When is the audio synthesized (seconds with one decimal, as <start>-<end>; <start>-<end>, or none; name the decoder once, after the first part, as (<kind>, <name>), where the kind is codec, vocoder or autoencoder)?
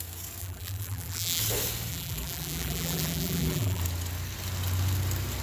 0.4-1.4 (vocoder, BigVGAN v2); 1.9-3.8